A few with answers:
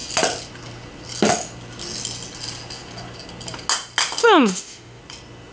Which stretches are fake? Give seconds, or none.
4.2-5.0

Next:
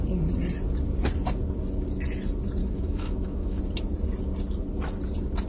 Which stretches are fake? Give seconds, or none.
2.6-3.6

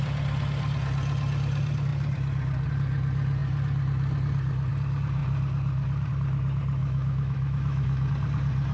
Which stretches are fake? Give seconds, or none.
6.8-8.1

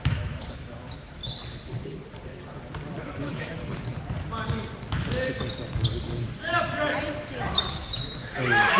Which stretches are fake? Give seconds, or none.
0.0-1.2; 3.0-3.6; 7.7-8.8

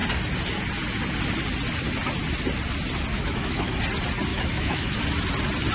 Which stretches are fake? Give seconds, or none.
3.1-3.8; 4.3-5.0

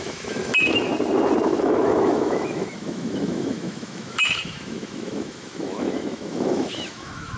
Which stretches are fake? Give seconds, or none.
0.0-0.9; 1.6-7.4